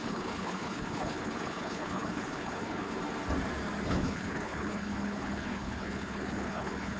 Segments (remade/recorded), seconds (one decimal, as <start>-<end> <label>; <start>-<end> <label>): 0.0-3.0 remade; 3.0-3.9 recorded; 3.9-7.0 remade